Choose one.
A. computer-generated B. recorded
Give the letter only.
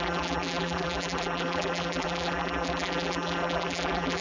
A